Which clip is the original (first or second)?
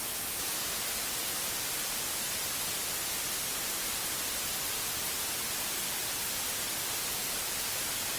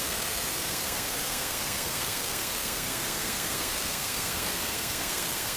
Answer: first